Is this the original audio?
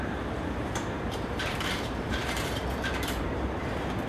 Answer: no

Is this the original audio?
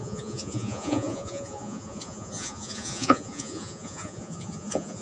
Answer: no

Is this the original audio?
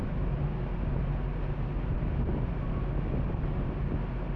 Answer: yes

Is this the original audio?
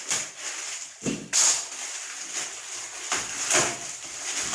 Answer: yes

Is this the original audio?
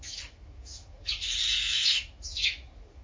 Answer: no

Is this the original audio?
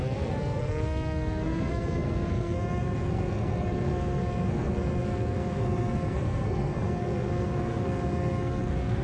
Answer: no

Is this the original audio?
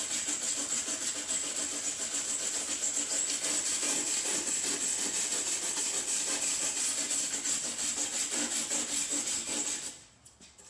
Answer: yes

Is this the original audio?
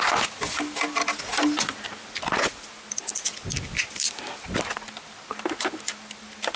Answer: yes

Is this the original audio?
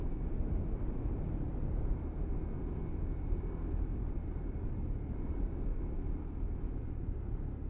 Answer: yes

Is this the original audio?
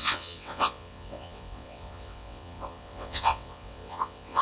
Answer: no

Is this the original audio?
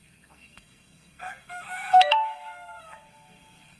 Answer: no